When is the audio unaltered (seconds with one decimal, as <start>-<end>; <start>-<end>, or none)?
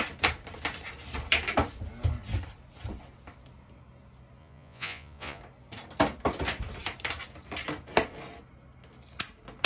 0.0-4.4; 5.4-9.7